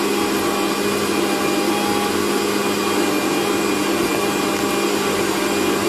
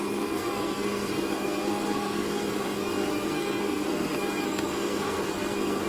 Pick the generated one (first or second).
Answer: second